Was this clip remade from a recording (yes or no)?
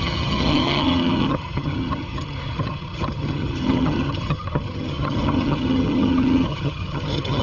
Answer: yes